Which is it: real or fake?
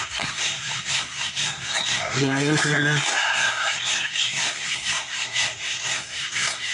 fake